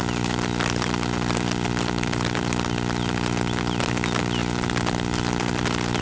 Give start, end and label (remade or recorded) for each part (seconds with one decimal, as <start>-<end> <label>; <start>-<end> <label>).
0.0-6.0 recorded